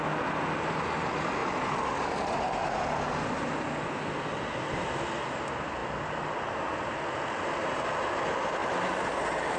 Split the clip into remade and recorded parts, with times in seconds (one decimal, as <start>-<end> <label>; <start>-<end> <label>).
0.0-9.6 recorded